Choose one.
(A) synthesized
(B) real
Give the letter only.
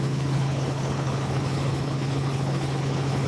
A